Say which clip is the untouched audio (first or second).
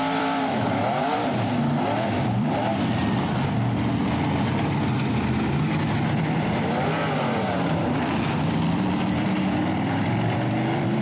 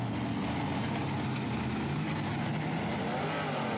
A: second